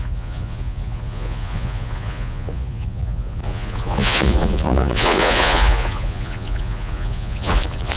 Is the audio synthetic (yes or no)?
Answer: yes